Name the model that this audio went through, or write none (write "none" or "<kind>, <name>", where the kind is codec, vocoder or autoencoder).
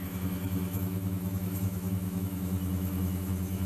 autoencoder, DAC-VAE